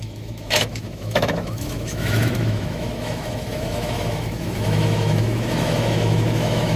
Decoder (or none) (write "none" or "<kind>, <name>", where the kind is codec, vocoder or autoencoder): autoencoder, DAC-VAE